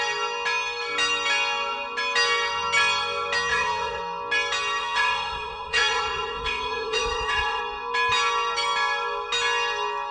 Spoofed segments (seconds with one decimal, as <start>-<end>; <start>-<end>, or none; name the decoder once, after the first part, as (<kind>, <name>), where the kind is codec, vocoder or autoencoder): 3.5-4.0 (vocoder, Vocos); 4.8-7.6